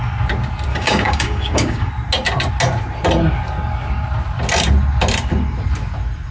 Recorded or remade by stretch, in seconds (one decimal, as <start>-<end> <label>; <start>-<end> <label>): 0.0-0.7 recorded; 0.7-1.9 remade; 1.9-6.3 recorded